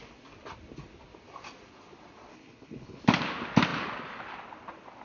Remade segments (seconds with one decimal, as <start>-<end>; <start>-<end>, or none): 2.3-3.0